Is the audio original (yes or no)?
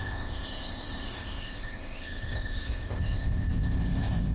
no